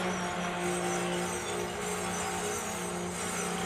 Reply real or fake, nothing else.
real